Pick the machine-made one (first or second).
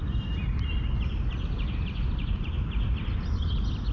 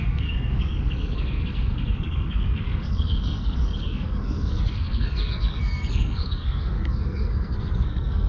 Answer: second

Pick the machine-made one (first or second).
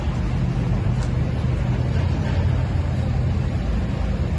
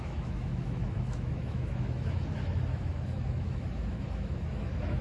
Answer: second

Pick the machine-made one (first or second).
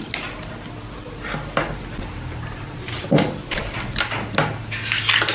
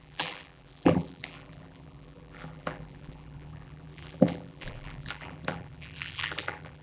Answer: second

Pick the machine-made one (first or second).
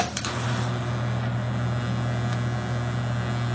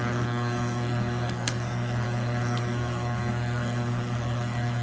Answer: second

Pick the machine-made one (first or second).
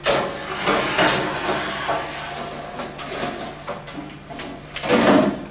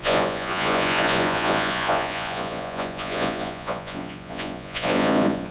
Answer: second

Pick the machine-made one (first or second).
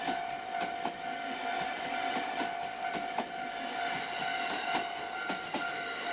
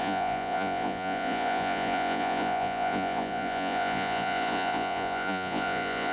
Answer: second